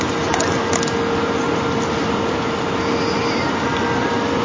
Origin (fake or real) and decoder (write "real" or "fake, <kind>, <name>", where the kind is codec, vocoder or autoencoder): real